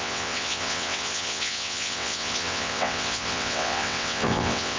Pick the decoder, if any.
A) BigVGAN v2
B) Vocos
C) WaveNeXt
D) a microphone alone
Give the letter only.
C